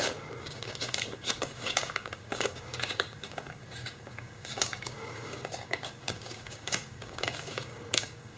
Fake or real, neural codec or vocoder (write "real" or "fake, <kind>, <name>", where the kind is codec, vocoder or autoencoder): fake, codec, DAC